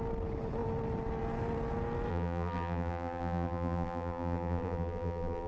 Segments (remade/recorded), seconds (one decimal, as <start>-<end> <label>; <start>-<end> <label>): 0.0-2.1 recorded; 2.1-5.5 remade